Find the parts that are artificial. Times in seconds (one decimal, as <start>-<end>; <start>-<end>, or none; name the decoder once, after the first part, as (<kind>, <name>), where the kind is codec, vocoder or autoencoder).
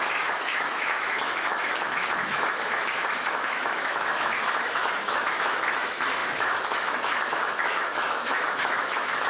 0.0-9.3 (autoencoder, DAC-VAE)